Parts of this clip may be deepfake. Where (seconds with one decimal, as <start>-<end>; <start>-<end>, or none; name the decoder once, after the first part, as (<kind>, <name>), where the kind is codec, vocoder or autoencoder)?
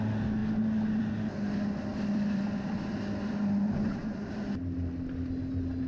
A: 1.9-4.4 (vocoder, BigVGAN v2)